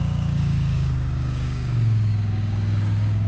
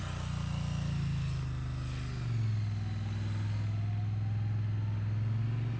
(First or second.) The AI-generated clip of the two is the first